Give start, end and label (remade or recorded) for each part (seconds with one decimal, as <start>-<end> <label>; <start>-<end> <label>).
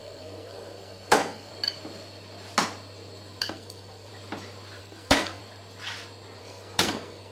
0.0-1.5 remade; 1.5-3.4 recorded; 3.4-4.1 remade; 4.1-4.8 recorded; 4.8-5.4 remade; 5.4-6.4 recorded; 6.4-7.3 remade